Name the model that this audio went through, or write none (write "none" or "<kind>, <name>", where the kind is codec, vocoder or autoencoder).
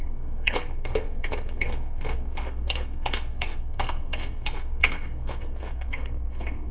codec, SNAC